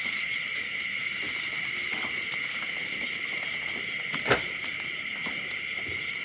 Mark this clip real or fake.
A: real